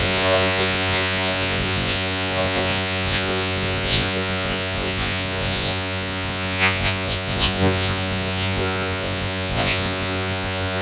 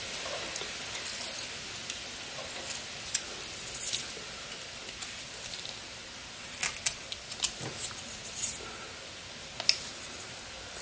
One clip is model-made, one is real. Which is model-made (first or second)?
first